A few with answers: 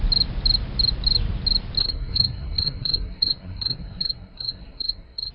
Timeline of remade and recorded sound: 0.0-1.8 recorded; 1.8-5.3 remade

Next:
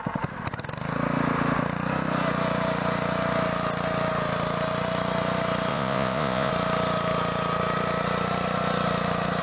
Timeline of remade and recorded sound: 0.0-5.7 recorded; 5.7-6.5 remade; 6.5-9.4 recorded

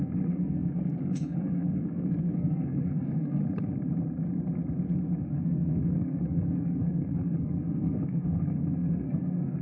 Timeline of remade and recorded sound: 0.0-3.4 remade; 3.4-5.2 recorded; 5.2-9.6 remade

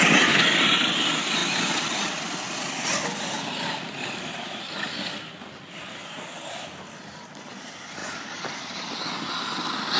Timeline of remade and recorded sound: 0.0-10.0 recorded

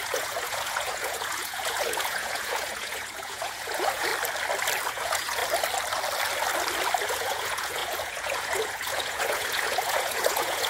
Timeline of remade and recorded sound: 0.0-4.1 remade; 4.1-4.9 recorded; 4.9-5.4 remade; 5.4-7.1 recorded; 7.1-10.7 remade

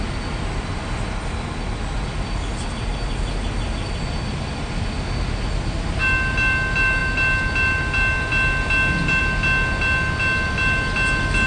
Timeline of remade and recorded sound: 0.0-11.5 recorded

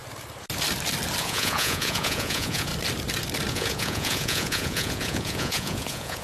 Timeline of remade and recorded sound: 0.0-1.2 recorded; 1.2-2.7 remade; 2.7-3.5 recorded; 3.5-6.2 remade

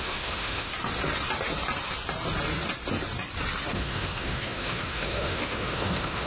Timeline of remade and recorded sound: 0.0-0.7 remade; 0.7-3.7 recorded; 3.7-6.3 remade